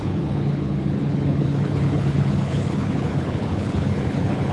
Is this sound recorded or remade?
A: remade